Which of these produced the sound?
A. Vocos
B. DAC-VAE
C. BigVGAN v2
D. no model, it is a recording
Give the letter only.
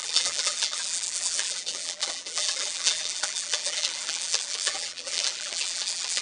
C